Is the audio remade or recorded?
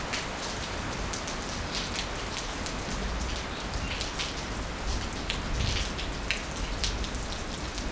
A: recorded